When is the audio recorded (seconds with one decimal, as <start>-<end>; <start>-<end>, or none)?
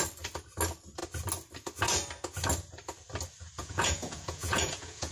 0.0-3.6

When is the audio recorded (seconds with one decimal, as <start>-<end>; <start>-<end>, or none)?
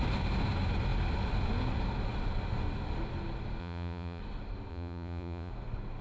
0.0-3.6; 4.2-4.7; 5.5-6.0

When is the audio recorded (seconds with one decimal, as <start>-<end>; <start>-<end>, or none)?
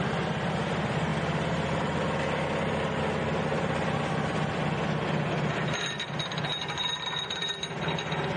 1.1-5.7